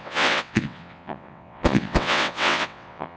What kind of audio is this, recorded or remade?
remade